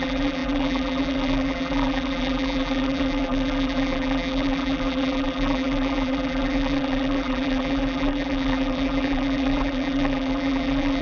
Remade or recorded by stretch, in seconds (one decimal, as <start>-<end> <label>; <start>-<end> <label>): 0.0-11.0 remade